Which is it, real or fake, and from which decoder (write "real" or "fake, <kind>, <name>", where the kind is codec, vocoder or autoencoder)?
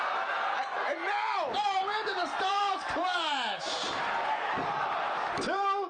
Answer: fake, vocoder, BigVGAN v2